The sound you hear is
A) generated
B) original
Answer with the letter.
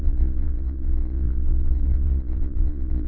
A